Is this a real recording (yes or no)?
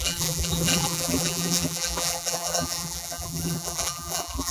no